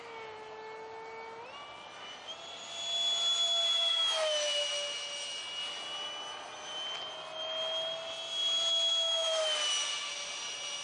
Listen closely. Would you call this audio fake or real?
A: real